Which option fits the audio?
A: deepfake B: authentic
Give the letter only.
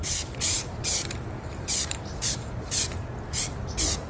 A